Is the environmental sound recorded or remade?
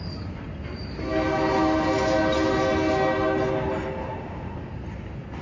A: recorded